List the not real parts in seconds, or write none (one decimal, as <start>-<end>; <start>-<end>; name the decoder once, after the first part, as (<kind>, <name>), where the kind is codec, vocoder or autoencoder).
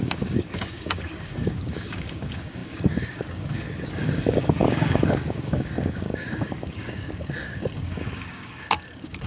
0.0-9.3 (codec, DAC)